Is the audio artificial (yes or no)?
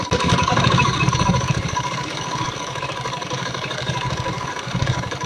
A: yes